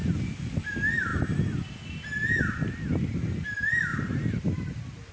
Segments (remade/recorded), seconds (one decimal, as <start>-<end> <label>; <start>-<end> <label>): 0.0-3.9 recorded; 3.9-4.5 remade; 4.5-5.1 recorded